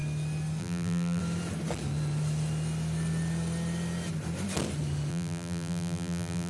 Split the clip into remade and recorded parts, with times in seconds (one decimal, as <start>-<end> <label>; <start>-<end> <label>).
0.0-0.6 recorded; 0.6-1.2 remade; 1.2-5.1 recorded; 5.1-6.5 remade